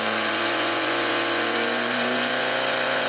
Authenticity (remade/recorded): remade